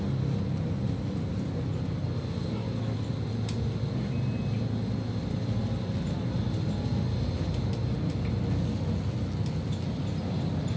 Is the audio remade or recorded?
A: recorded